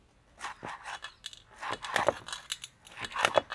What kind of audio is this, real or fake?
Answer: real